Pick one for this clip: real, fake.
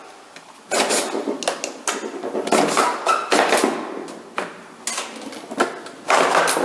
real